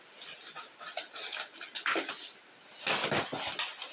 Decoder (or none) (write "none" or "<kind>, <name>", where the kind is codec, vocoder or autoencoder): none